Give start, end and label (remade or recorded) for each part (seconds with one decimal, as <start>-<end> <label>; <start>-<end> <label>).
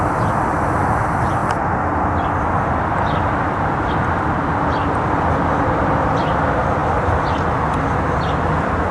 0.0-8.9 recorded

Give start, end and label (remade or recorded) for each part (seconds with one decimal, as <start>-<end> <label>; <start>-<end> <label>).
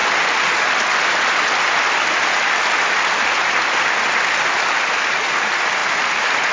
0.0-6.5 recorded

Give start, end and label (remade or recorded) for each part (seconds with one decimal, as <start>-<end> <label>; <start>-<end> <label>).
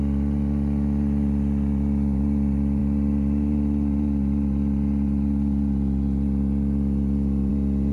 0.0-7.9 recorded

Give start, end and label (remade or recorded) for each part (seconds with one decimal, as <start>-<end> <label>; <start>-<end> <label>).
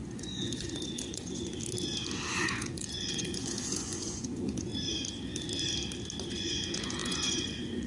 0.0-1.5 remade; 1.5-2.3 recorded; 2.3-4.7 remade; 4.7-6.3 recorded; 6.3-7.9 remade